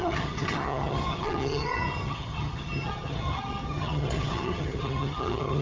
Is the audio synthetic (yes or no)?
yes